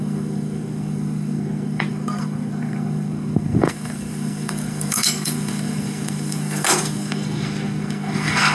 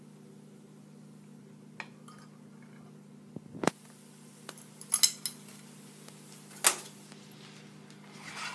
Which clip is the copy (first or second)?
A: first